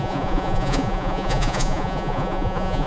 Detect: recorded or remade remade